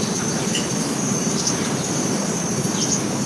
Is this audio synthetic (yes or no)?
no